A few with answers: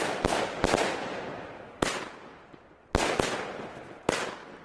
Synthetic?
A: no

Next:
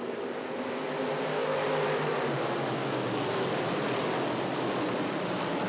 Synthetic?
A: no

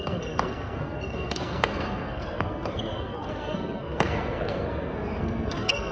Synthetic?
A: yes